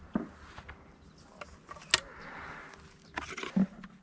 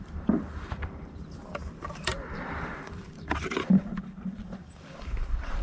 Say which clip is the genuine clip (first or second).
first